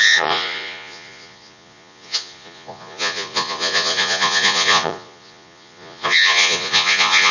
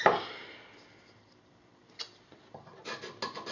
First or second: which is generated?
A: first